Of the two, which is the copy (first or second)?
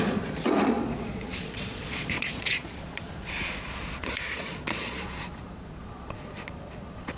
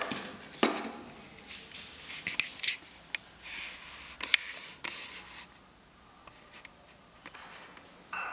first